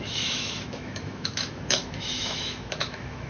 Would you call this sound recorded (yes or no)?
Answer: no